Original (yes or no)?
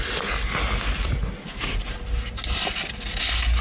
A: yes